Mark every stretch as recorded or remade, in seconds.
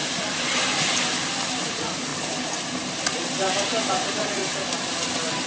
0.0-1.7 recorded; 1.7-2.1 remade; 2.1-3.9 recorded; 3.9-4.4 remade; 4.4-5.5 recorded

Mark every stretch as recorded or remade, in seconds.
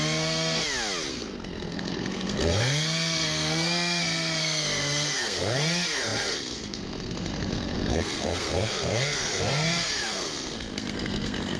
0.0-0.6 remade; 0.6-1.1 recorded; 1.1-11.6 remade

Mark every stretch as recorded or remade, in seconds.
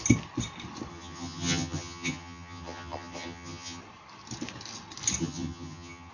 0.0-0.9 recorded; 0.9-3.8 remade; 3.8-5.2 recorded; 5.2-6.1 remade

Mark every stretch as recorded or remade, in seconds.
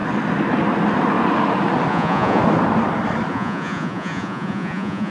0.0-1.9 recorded; 1.9-2.4 remade; 2.4-3.3 recorded; 3.3-5.1 remade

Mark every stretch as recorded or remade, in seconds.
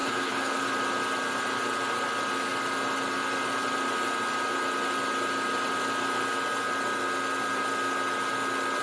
0.0-0.7 remade; 0.7-8.8 recorded